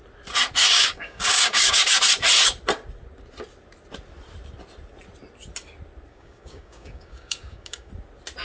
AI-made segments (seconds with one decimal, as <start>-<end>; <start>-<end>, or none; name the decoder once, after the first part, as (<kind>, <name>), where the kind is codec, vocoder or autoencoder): 0.6-1.9 (codec, DAC); 6.1-7.9